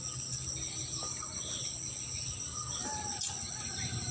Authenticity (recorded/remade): recorded